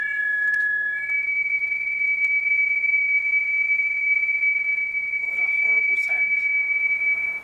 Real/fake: fake